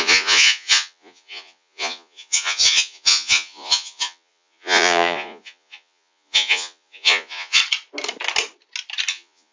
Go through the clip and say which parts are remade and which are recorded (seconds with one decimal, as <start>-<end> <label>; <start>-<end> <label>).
0.0-7.6 remade; 7.6-9.1 recorded; 9.1-9.5 remade